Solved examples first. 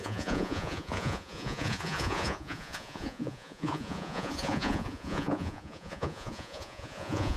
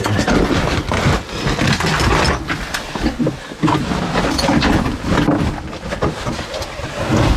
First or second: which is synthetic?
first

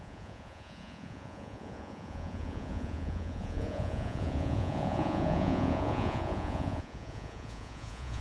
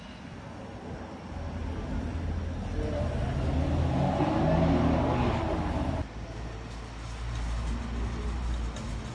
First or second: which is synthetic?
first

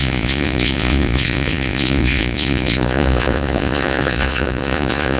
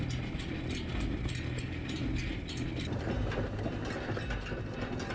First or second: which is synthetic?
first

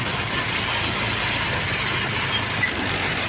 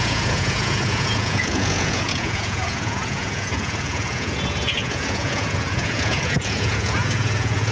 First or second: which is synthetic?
second